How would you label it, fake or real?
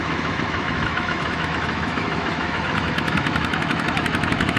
fake